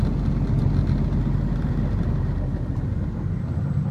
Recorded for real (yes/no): yes